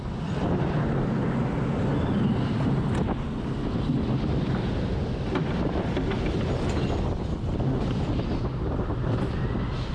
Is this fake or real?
real